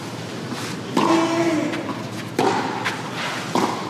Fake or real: real